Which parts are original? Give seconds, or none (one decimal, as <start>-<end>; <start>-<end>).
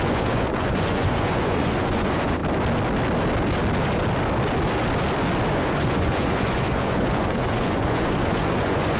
2.4-5.5